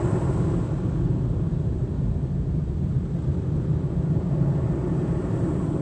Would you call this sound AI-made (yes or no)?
no